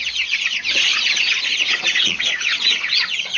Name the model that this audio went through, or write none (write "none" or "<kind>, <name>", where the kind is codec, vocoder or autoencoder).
vocoder, Vocos